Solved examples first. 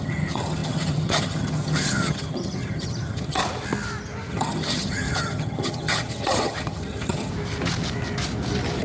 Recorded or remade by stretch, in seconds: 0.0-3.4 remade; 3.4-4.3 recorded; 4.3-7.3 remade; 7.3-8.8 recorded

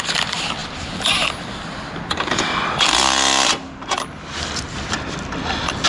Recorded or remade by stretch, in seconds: 0.0-5.9 recorded